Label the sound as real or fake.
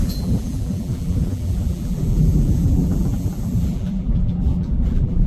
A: fake